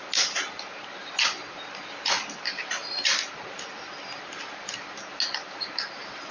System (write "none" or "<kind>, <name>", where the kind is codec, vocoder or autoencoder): none